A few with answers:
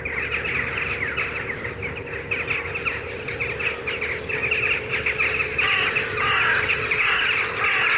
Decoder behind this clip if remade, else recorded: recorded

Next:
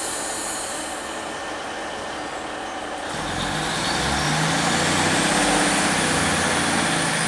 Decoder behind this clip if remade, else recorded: recorded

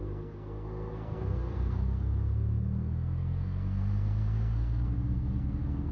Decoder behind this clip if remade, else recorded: remade, codec, SNAC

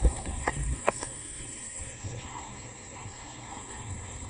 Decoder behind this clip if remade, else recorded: remade, codec, SNAC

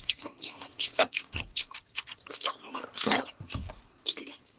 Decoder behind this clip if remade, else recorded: remade, codec, SNAC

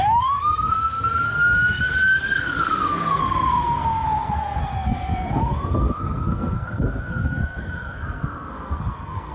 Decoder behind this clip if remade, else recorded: remade, codec, SNAC